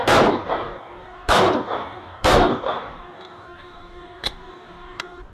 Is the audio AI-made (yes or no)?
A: yes